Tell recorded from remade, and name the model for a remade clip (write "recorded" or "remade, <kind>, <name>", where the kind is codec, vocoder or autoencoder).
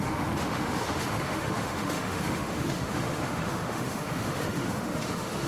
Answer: remade, autoencoder, DAC-VAE